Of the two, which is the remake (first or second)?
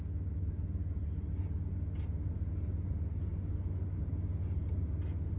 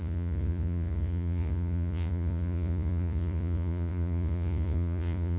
second